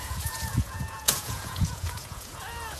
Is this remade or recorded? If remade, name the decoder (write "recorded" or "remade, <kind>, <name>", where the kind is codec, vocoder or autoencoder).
remade, vocoder, Vocos